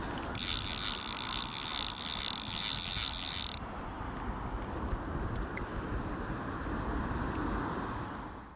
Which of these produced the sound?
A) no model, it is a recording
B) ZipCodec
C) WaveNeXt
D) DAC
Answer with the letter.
A